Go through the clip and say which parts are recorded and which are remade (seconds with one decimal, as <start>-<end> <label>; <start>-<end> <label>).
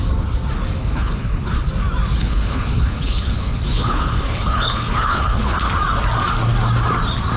0.0-0.8 recorded; 0.8-1.7 remade; 1.7-2.2 recorded; 2.2-5.7 remade; 5.7-7.4 recorded